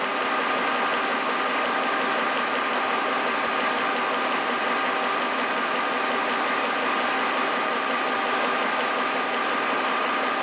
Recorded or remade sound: recorded